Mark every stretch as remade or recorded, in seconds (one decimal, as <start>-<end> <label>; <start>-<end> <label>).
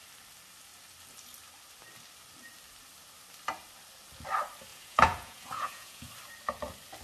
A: 0.0-4.7 recorded; 4.7-6.1 remade; 6.1-7.0 recorded